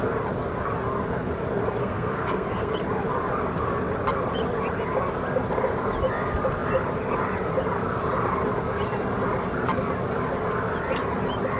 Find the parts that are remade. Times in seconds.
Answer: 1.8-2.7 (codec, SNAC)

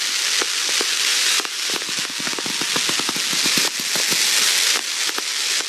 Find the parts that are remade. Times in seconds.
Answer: 1.1-1.8 (vocoder, BigVGAN v2)

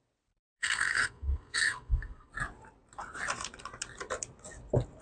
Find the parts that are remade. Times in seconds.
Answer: 0.6-2.3 (codec, SNAC)

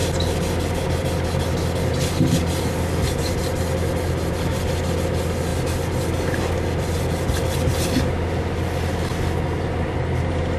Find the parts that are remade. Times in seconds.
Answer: none

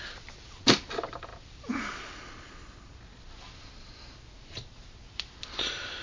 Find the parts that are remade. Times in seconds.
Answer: none